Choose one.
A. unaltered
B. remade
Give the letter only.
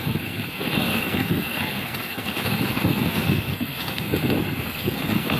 B